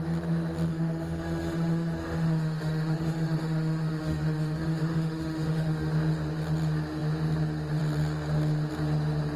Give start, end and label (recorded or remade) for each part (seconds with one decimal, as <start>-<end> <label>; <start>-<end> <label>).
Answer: 0.0-0.7 recorded; 0.7-5.9 remade; 5.9-9.4 recorded